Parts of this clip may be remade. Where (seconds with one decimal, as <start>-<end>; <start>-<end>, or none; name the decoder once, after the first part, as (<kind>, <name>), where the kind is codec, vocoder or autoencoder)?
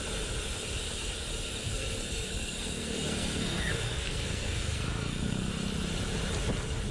1.6-5.5 (codec, SNAC)